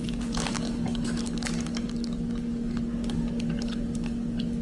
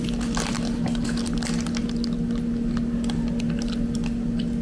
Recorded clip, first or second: second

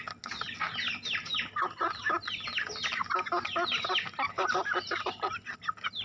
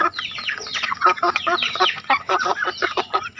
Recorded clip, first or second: first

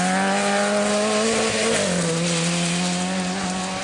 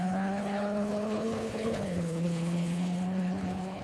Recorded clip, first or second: first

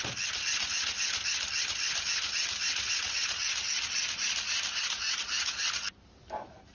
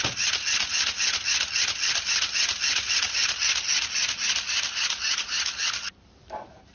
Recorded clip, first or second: first